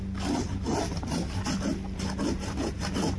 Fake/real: real